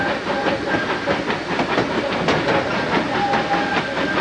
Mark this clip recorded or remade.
recorded